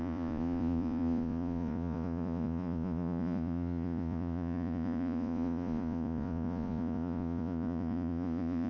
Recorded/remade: remade